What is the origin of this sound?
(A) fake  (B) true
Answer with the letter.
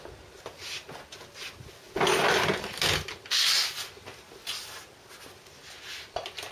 B